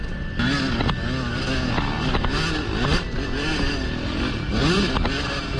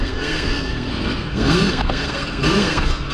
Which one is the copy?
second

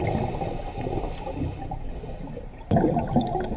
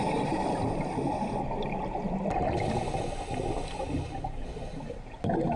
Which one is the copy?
first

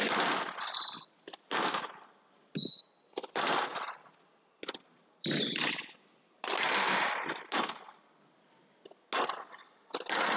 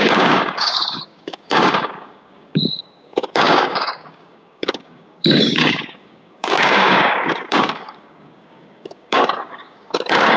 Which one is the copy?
second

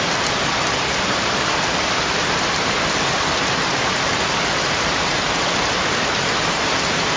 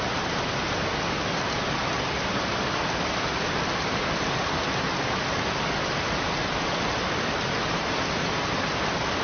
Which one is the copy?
first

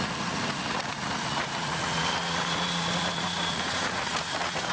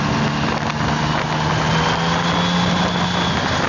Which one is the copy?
first